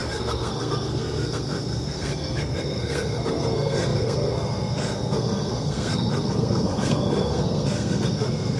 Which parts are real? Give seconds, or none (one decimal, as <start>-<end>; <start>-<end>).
none